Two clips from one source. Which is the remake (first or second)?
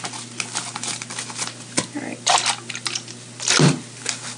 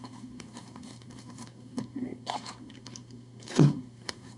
second